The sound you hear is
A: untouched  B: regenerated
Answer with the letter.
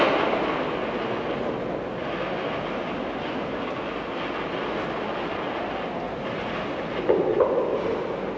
A